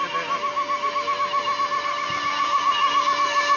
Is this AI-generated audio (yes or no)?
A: no